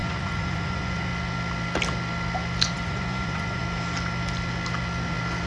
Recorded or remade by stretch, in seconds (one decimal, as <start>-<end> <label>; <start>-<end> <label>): 0.0-1.1 remade; 1.1-2.7 recorded; 2.7-3.6 remade; 3.6-5.5 recorded